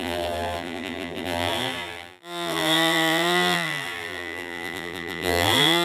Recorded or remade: remade